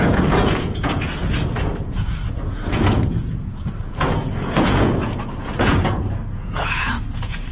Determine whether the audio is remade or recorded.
remade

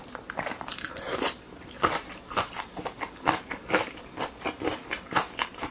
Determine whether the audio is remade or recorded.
remade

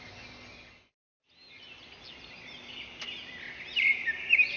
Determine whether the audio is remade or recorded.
recorded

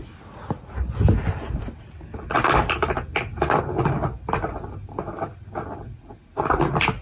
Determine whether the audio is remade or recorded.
recorded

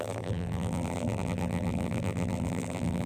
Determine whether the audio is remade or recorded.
remade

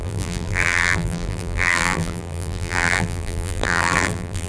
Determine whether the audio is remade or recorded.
remade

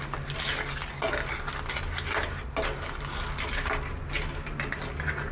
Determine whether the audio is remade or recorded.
recorded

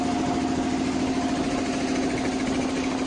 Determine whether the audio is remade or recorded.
recorded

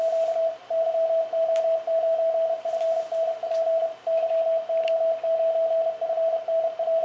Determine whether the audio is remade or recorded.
recorded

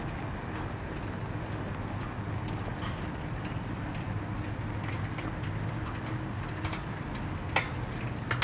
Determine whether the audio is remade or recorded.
recorded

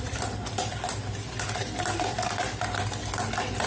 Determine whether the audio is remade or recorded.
recorded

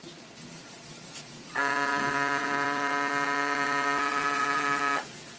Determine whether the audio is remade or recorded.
remade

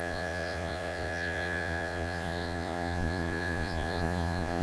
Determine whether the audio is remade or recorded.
remade